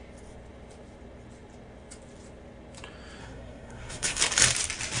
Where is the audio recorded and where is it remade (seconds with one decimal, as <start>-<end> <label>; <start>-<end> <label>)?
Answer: 0.0-3.2 recorded; 3.2-4.2 remade; 4.2-5.0 recorded